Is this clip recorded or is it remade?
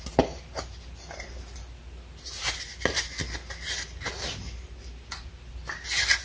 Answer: recorded